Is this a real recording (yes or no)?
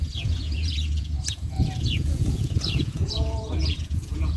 no